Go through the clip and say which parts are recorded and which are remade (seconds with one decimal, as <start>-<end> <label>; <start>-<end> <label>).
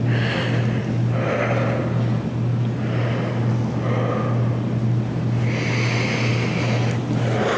0.0-7.6 recorded